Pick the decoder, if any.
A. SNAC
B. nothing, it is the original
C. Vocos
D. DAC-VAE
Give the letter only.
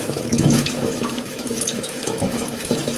D